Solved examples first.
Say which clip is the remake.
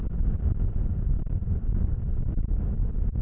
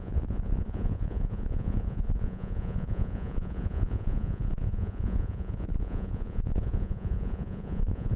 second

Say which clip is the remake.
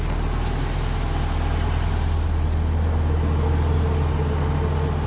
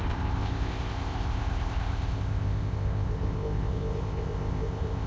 second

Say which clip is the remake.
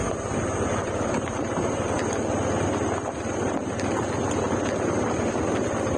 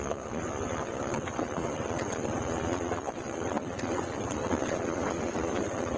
second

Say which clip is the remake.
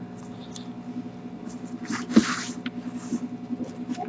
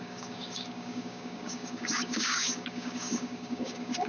second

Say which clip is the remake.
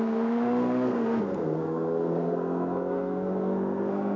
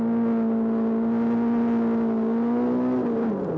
first